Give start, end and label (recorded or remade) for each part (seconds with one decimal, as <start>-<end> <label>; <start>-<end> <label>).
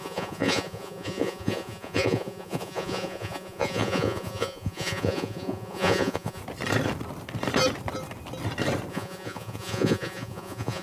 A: 0.0-6.4 remade; 6.4-8.9 recorded; 8.9-10.8 remade